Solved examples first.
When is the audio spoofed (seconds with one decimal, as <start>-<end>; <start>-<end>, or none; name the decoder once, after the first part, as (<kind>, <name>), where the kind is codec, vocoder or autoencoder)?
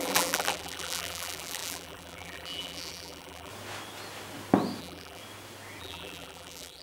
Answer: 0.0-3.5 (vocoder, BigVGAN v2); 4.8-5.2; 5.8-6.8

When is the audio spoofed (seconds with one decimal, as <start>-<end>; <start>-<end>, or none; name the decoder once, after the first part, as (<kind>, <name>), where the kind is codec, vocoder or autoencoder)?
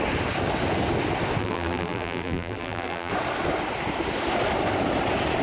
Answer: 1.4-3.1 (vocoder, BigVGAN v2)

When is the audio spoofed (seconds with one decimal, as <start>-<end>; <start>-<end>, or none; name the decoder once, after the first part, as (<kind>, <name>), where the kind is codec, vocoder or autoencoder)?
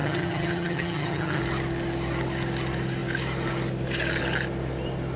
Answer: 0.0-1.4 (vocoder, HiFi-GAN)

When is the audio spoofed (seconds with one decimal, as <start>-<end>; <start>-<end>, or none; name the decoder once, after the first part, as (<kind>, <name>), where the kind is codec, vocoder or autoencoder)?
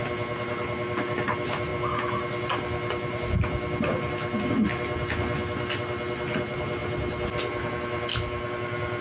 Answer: none